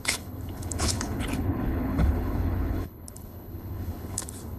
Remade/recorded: remade